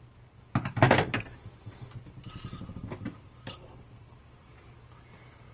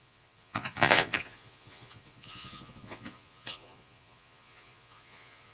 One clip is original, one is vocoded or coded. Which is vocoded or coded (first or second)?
second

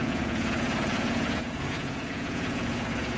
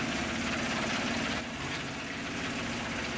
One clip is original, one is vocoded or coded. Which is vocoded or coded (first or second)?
first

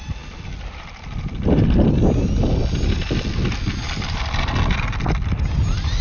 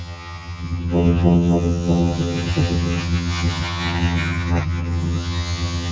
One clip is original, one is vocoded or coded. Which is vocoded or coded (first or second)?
second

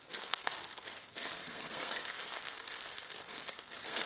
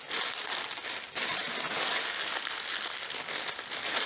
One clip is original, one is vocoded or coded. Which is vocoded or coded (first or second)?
first